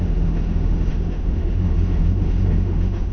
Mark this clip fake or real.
fake